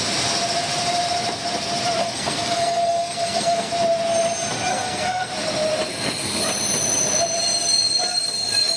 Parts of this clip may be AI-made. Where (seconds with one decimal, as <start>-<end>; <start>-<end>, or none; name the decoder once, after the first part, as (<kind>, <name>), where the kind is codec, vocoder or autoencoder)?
2.0-3.7 (codec, SNAC); 4.7-5.3; 5.9-6.4